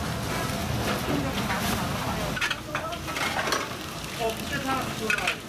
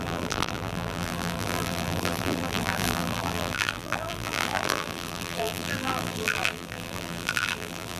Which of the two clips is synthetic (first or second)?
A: second